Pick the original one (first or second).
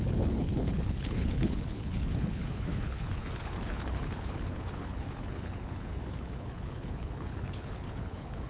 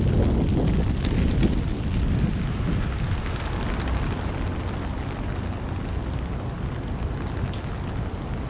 second